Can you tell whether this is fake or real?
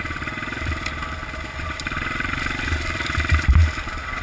real